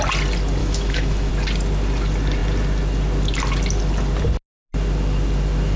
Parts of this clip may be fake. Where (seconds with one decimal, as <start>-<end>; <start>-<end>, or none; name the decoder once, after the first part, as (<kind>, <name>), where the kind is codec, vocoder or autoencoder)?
0.6-1.3 (autoencoder, DAC-VAE)